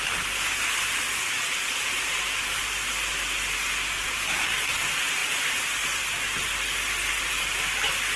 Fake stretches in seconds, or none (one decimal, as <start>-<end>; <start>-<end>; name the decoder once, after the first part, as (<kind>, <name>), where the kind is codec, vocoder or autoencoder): none